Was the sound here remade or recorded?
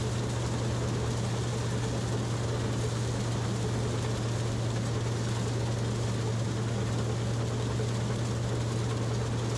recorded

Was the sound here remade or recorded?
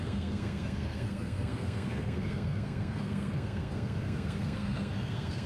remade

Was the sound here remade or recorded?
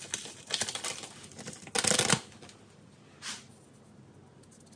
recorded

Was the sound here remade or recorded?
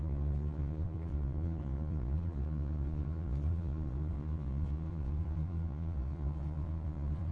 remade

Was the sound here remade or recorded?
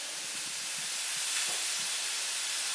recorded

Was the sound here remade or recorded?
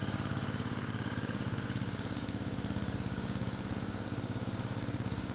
remade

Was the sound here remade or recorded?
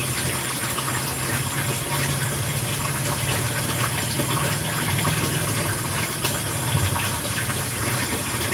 remade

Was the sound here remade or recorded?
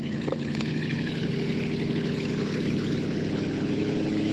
remade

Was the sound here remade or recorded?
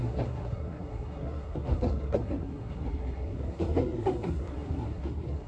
remade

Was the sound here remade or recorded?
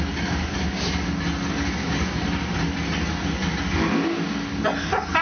recorded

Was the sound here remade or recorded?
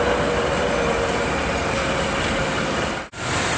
recorded